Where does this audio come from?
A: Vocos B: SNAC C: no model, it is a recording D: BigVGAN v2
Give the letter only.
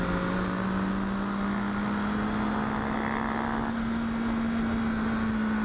C